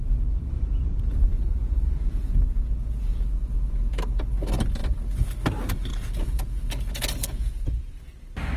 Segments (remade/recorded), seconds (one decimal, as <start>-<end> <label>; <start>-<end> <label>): 0.0-1.3 recorded; 1.3-4.3 remade; 4.3-5.9 recorded; 5.9-7.7 remade; 7.7-8.6 recorded